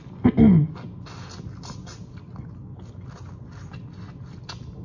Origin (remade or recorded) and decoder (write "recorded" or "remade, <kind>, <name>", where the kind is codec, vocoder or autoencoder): recorded